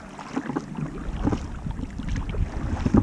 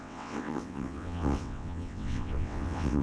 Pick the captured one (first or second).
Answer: first